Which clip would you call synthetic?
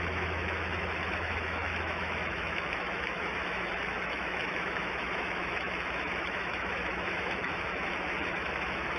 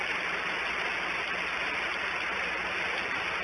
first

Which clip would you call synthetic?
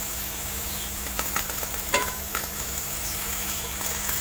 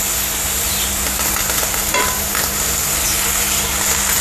first